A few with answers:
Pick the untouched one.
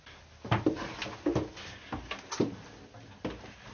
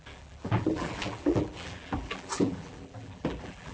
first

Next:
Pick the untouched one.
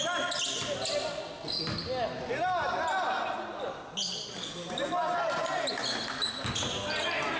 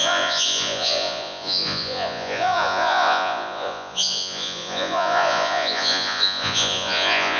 first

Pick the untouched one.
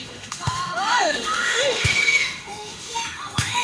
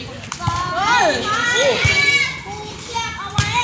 second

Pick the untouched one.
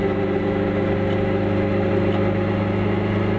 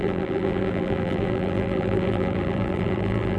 first